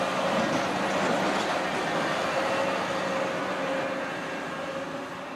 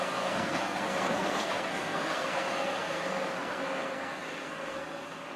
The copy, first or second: second